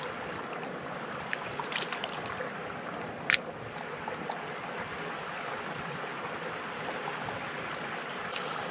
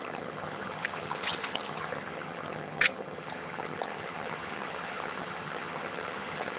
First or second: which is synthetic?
second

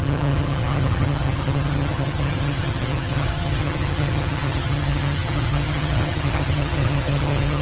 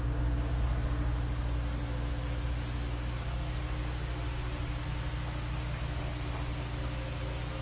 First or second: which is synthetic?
first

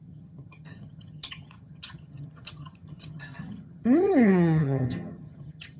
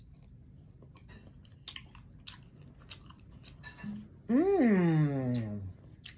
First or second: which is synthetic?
first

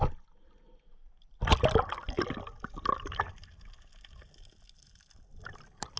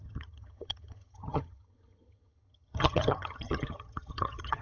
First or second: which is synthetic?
second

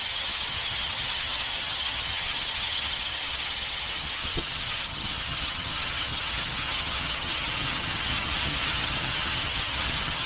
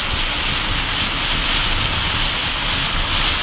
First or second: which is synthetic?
first